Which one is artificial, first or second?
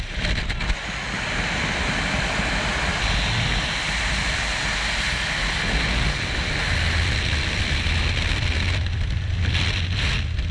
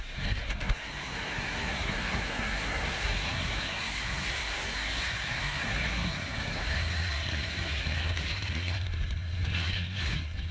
second